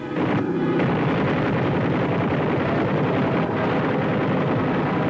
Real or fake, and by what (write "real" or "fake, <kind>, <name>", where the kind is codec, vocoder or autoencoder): fake, vocoder, BigVGAN v2